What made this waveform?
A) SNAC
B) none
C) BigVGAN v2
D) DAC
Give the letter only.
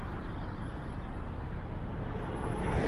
B